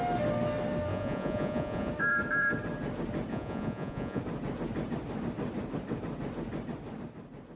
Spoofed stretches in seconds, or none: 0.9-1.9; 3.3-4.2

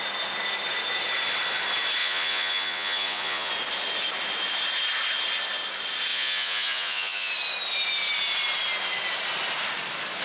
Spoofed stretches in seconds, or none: 2.0-3.5; 6.1-7.3

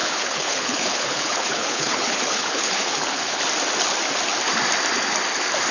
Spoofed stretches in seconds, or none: 0.0-3.4